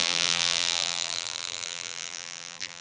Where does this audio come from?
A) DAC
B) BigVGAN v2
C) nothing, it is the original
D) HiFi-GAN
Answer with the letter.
B